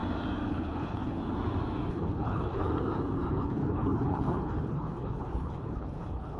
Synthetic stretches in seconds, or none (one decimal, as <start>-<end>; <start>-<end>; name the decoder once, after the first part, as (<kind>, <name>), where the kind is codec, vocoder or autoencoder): 0.5-1.2 (codec, HILCodec); 1.9-2.7; 3.3-6.4